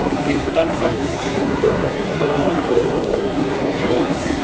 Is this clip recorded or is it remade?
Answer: remade